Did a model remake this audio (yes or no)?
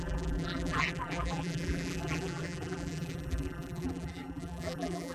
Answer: yes